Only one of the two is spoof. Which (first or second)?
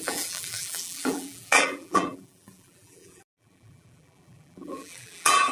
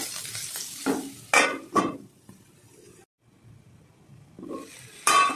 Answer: first